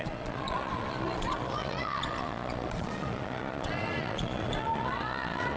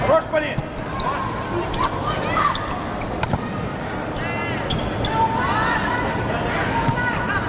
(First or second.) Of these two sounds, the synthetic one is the first